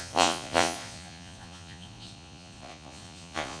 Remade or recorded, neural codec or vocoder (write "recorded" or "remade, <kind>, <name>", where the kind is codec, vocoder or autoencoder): remade, vocoder, Vocos